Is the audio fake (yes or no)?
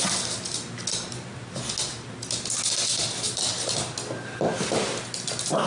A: no